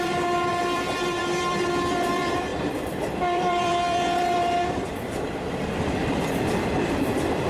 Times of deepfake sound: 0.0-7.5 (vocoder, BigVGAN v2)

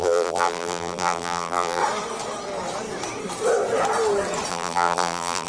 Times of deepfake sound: 0.0-1.8 (vocoder, BigVGAN v2); 4.5-5.5

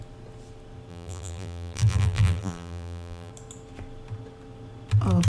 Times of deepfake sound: 0.9-3.3 (vocoder, BigVGAN v2)

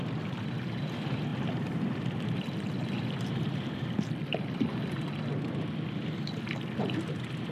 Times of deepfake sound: 1.3-4.0 (vocoder, BigVGAN v2)